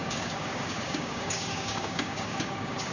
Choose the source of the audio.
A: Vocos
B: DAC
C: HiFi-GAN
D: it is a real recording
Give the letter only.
B